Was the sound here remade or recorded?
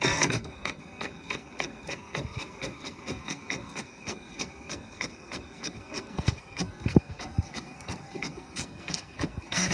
remade